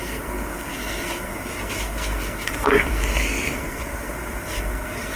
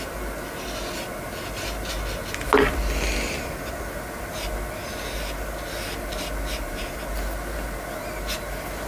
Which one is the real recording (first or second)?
second